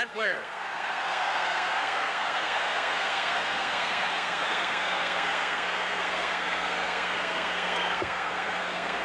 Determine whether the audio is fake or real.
fake